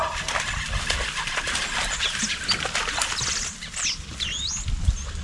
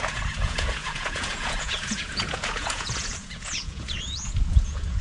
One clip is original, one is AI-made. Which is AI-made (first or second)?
second